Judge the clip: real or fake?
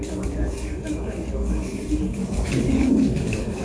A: fake